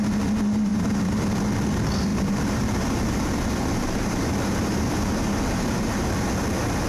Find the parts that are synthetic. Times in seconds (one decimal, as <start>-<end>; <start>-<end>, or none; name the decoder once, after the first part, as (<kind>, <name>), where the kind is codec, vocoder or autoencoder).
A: 0.7-1.2 (vocoder, BigVGAN v2); 2.1-6.1